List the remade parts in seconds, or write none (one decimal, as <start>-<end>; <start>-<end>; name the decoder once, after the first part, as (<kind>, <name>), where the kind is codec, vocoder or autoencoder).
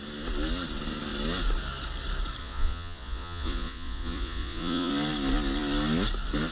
2.4-4.9 (vocoder, Vocos)